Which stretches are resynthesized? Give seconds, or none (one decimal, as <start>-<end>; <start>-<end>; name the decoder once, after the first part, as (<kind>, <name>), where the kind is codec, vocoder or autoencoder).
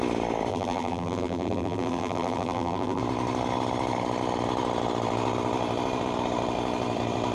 0.5-3.0 (vocoder, BigVGAN v2)